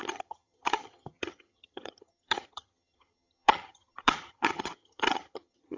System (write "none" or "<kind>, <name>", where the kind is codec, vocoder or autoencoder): vocoder, HiFi-GAN